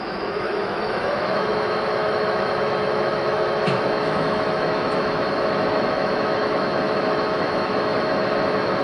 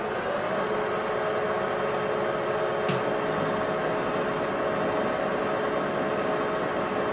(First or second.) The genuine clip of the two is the second